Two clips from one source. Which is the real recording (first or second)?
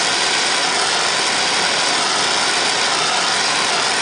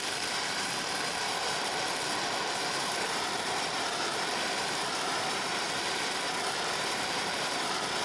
first